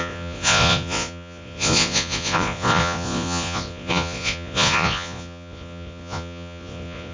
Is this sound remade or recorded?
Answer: remade